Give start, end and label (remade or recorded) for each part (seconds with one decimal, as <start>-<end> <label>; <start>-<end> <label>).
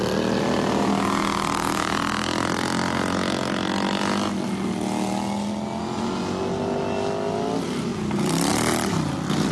0.0-9.5 recorded